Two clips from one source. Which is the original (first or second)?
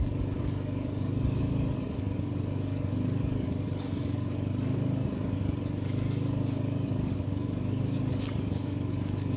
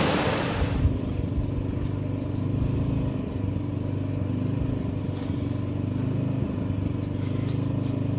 second